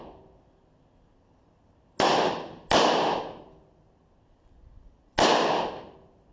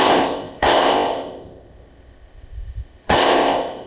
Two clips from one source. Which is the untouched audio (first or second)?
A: first